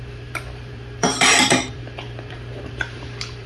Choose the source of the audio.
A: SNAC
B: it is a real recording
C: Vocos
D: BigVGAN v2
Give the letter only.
D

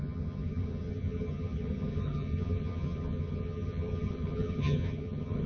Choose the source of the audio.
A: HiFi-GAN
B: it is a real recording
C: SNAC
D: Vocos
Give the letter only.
A